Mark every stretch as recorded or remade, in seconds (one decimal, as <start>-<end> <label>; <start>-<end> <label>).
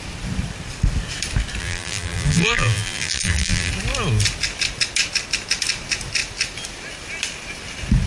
0.0-1.6 recorded; 1.6-3.7 remade; 3.7-8.1 recorded